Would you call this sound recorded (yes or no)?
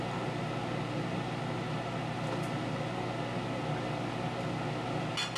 yes